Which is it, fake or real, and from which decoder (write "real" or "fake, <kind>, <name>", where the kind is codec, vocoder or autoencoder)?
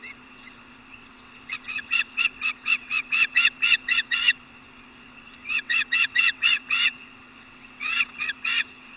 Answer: fake, vocoder, WaveNeXt